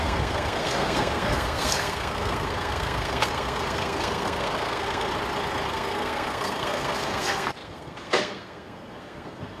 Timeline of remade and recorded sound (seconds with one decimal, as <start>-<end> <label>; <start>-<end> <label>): 0.0-5.1 remade; 5.1-5.7 recorded; 5.7-9.6 remade